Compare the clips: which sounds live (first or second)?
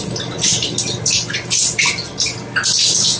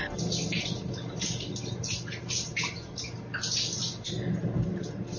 first